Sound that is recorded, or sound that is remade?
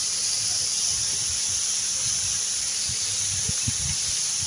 recorded